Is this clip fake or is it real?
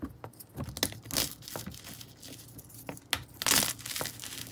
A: real